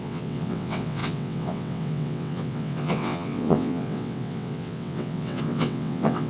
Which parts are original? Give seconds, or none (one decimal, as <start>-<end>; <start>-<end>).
none